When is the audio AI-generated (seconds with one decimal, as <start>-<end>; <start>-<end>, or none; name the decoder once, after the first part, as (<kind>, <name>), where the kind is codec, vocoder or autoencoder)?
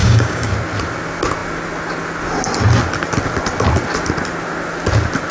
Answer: 0.0-0.5 (codec, DAC)